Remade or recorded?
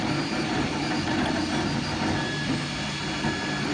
recorded